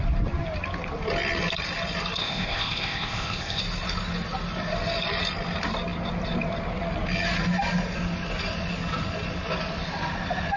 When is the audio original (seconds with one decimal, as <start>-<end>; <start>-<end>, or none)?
0.0-2.2; 3.6-10.6